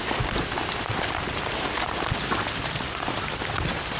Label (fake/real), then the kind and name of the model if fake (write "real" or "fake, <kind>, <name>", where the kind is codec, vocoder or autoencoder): real